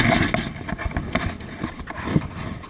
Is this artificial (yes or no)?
no